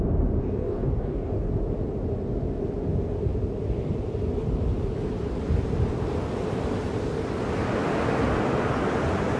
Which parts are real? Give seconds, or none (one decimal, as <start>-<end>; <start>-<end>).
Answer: 0.0-0.4; 1.5-9.4